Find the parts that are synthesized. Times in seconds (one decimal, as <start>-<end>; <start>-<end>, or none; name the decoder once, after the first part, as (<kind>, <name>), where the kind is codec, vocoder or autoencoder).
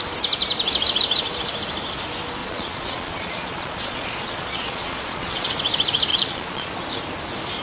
2.4-5.5 (vocoder, Vocos); 6.1-6.7